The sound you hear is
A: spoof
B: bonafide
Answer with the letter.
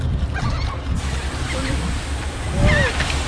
B